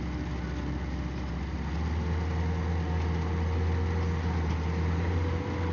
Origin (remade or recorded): recorded